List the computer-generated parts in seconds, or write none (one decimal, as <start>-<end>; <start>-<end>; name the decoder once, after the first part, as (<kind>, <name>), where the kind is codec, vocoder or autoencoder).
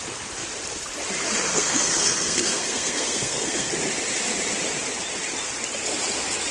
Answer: 1.5-3.7 (codec, SNAC)